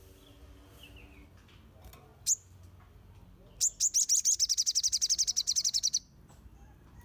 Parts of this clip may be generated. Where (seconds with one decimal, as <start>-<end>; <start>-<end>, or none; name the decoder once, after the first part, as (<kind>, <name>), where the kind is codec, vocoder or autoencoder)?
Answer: none